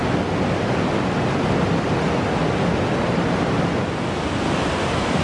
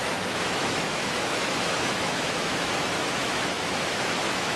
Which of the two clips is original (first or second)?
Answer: first